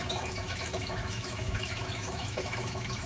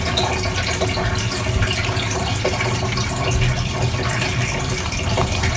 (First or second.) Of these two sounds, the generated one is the first